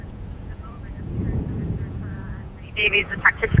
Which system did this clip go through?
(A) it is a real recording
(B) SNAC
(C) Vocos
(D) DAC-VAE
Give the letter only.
C